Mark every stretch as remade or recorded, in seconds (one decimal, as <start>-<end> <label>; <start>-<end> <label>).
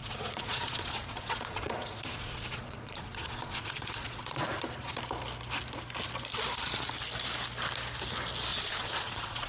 0.0-5.0 remade; 5.0-8.5 recorded; 8.5-9.5 remade